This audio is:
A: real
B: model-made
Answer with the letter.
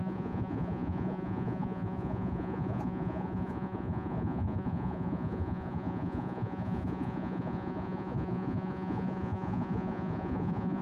B